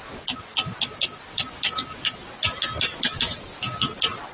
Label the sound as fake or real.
real